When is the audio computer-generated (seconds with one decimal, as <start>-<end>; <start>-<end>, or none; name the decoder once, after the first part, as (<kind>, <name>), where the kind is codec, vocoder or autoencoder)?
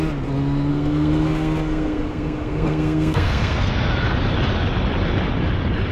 0.7-3.9 (codec, SNAC)